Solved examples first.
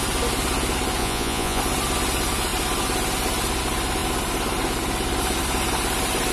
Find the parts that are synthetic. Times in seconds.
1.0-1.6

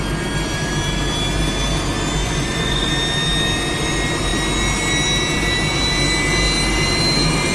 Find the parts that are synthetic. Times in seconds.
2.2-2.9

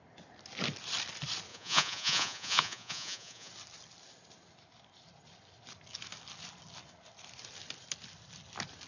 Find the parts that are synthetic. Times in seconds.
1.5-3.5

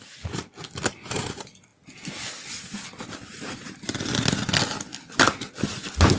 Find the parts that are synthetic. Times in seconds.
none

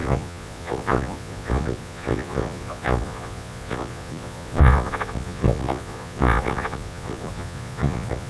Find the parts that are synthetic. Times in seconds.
0.0-8.3

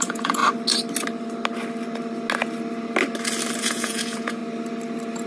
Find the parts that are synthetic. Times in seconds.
0.0-0.4; 3.6-4.4

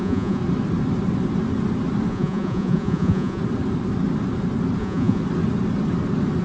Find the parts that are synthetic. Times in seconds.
0.0-0.4; 2.1-3.4; 4.8-5.2